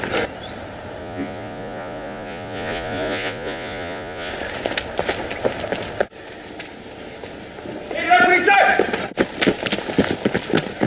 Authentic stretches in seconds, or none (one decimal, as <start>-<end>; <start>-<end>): 0.0-1.0; 4.3-10.9